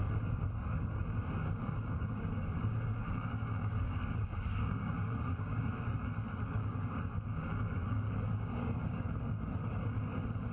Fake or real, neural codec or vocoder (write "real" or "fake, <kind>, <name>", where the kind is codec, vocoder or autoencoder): fake, codec, DAC